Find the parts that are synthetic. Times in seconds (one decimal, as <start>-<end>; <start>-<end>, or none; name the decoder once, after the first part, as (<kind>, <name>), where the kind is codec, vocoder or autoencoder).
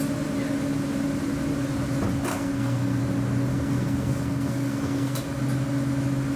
2.3-3.0 (codec, SNAC); 3.5-5.2